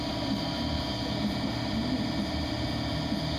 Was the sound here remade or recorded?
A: recorded